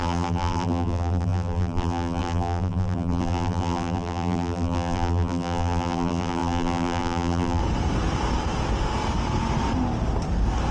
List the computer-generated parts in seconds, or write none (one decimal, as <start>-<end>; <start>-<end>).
0.0-7.6